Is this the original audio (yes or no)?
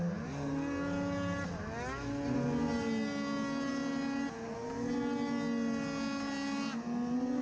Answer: yes